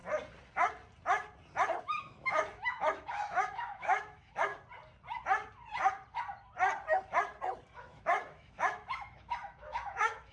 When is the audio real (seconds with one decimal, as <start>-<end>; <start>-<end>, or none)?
0.0-1.8; 4.5-7.8

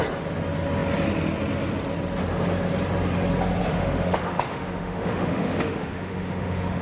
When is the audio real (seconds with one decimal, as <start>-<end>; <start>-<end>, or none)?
0.0-3.7